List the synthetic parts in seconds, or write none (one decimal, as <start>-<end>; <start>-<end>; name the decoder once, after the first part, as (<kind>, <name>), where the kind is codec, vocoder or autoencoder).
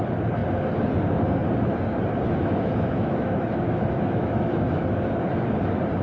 2.4-4.8 (autoencoder, DAC-VAE)